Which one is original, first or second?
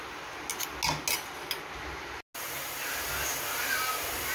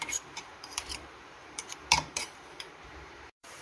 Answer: first